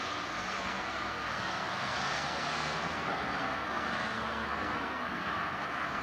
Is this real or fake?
fake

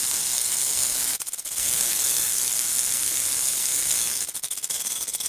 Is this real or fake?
fake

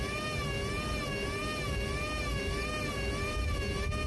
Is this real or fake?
real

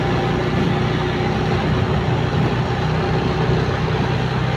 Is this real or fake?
real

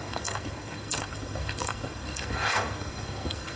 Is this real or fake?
fake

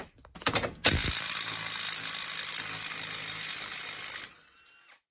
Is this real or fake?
real